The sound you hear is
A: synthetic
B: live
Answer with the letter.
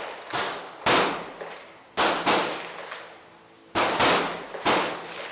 B